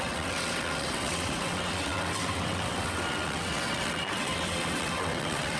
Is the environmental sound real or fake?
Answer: fake